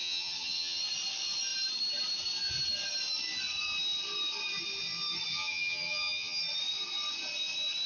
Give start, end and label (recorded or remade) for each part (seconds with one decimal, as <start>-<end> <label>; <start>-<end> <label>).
0.0-0.8 remade; 0.8-5.3 recorded; 5.3-6.4 remade; 6.4-7.9 recorded